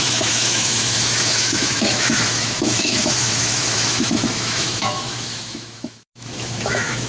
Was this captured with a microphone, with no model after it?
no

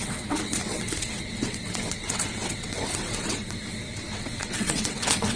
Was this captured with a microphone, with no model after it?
no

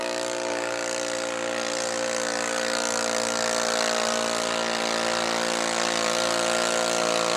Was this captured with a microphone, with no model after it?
yes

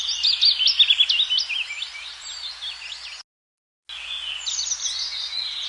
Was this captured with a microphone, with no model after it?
yes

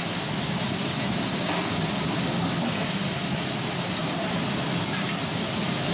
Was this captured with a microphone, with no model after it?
yes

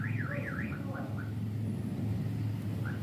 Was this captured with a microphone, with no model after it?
yes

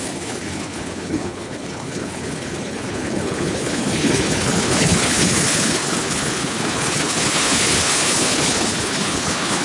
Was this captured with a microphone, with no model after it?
no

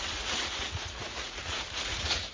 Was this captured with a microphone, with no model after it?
no